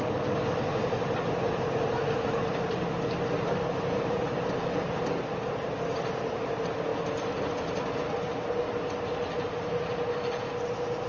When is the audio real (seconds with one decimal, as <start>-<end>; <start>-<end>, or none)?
0.0-11.1